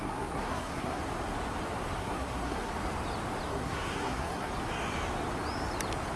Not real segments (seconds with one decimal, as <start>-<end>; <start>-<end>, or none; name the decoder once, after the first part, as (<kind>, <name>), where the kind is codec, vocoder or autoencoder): 0.0-1.0 (codec, SNAC); 2.0-2.7; 3.5-4.5